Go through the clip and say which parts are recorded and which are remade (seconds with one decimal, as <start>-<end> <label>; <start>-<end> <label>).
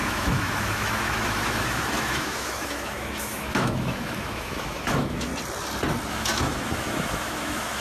0.0-5.3 remade; 5.3-6.1 recorded; 6.1-7.8 remade